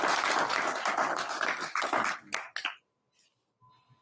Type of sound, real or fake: real